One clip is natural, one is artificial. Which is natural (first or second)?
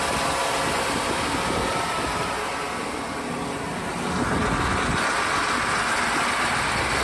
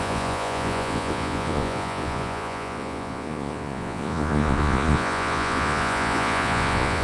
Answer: first